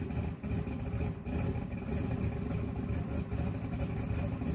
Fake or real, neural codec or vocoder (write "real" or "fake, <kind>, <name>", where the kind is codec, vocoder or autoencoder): real